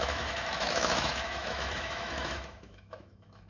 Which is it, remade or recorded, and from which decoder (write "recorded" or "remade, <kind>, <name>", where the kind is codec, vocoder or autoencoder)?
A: remade, autoencoder, DAC-VAE